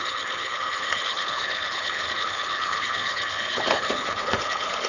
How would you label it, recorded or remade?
remade